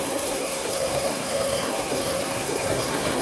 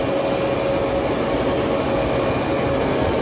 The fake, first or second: first